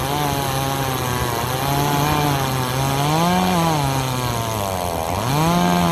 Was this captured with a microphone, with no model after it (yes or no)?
yes